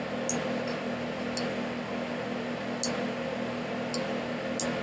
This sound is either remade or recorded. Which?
recorded